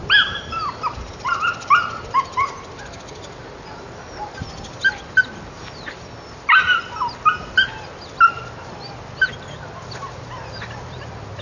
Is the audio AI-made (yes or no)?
no